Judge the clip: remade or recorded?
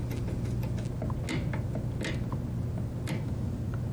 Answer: recorded